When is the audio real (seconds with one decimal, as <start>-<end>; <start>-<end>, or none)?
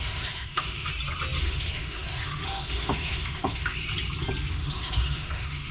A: 0.9-1.4; 3.8-4.5